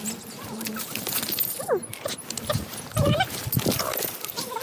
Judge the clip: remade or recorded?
recorded